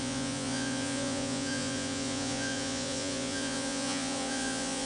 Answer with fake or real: fake